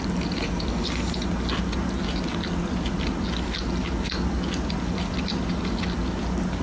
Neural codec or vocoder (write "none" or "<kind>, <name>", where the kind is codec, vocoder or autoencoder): none